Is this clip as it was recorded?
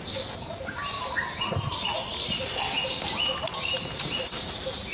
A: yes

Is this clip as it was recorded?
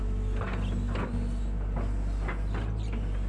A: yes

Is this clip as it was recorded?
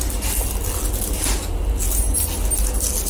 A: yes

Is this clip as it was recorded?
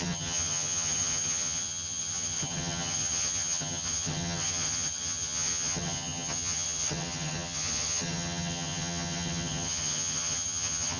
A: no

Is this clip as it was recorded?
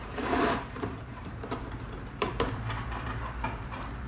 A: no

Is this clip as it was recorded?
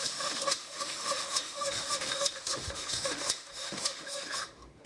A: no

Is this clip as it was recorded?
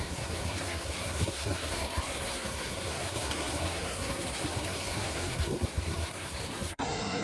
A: no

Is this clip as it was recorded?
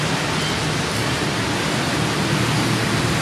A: yes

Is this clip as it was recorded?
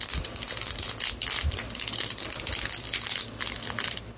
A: yes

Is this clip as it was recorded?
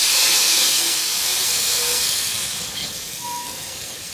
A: no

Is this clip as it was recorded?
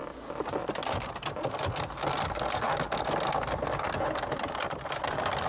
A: yes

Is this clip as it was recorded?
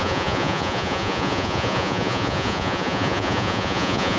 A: no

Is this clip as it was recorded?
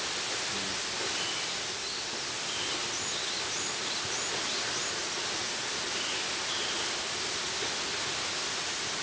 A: yes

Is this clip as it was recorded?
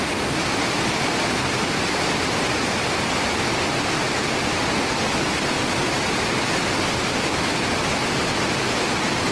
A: no